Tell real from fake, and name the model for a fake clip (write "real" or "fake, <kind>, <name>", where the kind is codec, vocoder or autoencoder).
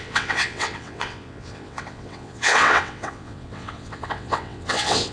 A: fake, vocoder, WaveNeXt